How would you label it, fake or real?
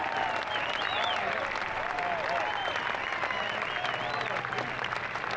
real